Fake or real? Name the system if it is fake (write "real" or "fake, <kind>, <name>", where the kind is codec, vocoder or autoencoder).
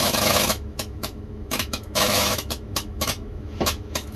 fake, autoencoder, DAC-VAE